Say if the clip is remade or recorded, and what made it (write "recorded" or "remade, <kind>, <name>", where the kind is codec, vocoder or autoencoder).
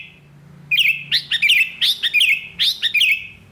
recorded